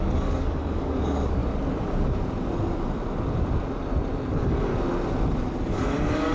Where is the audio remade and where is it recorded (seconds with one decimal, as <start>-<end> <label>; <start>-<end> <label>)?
0.0-1.4 remade; 1.4-4.3 recorded; 4.3-4.7 remade; 4.7-5.7 recorded; 5.7-6.3 remade